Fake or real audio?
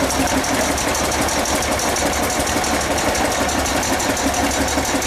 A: real